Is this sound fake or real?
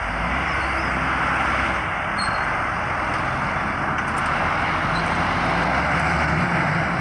real